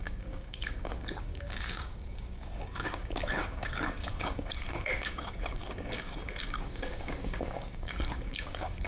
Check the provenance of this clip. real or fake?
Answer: fake